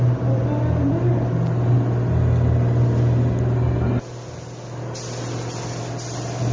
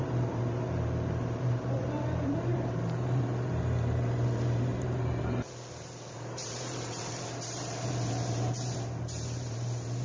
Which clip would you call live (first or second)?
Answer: first